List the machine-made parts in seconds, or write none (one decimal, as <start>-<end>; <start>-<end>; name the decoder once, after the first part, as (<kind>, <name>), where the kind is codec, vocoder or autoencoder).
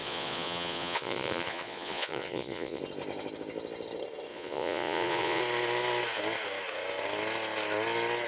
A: 0.0-2.8 (vocoder, Vocos); 4.3-5.4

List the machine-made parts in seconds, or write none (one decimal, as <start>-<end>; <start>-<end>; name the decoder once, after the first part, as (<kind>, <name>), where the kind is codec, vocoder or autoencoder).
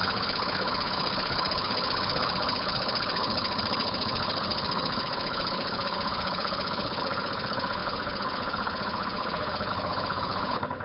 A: 0.0-10.8 (codec, HILCodec)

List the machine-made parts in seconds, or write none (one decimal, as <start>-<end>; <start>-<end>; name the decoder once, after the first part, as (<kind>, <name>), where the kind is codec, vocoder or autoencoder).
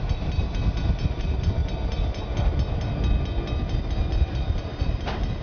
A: 0.0-0.4 (vocoder, BigVGAN v2); 1.1-1.6; 4.8-5.4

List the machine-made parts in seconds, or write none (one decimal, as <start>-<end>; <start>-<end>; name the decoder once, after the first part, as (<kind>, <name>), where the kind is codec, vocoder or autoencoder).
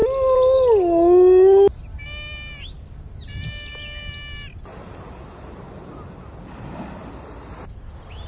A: none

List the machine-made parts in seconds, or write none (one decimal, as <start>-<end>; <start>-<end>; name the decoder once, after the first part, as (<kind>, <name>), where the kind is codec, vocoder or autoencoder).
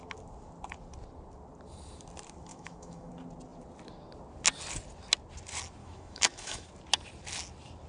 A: 2.5-3.1 (autoencoder, DAC-VAE); 5.8-6.7